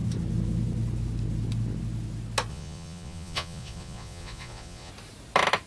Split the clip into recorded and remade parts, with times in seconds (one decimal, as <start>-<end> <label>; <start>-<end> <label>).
0.0-2.5 recorded; 2.5-4.9 remade; 4.9-5.7 recorded

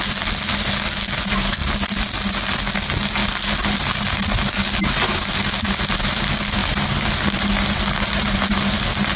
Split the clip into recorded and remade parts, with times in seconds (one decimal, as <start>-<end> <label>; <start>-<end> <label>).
0.0-9.2 recorded

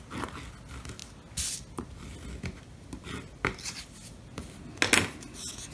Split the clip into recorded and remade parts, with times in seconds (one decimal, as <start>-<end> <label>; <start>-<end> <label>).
0.0-5.7 recorded

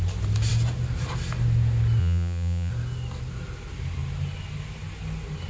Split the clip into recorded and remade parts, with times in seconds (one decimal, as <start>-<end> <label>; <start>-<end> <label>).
0.0-2.0 recorded; 2.0-2.7 remade; 2.7-5.5 recorded

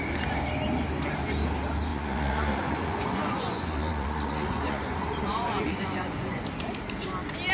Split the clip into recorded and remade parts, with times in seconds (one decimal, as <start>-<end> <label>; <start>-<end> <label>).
0.0-1.9 recorded; 1.9-6.4 remade; 6.4-7.5 recorded

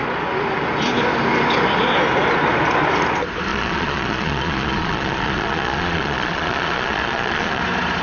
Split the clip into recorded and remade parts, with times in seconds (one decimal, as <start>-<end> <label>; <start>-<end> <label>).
0.0-3.5 recorded; 3.5-7.6 remade; 7.6-8.0 recorded